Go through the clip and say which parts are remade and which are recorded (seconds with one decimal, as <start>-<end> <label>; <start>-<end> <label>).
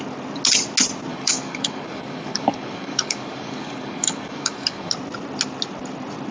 0.0-1.1 recorded; 1.1-4.9 remade; 4.9-6.3 recorded